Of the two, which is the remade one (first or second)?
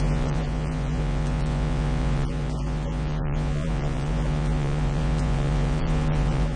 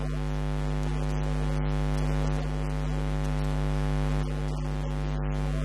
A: first